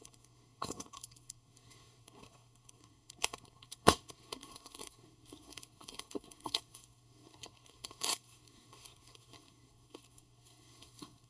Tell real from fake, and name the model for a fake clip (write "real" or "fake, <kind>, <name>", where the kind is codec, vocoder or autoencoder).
fake, codec, SNAC